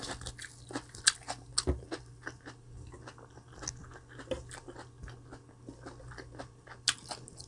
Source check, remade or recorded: recorded